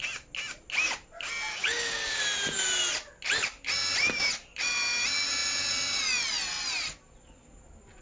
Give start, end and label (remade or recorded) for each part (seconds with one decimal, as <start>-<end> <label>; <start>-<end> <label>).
0.0-1.5 recorded; 1.5-2.2 remade; 2.2-8.0 recorded